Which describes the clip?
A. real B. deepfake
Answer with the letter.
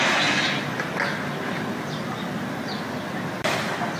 A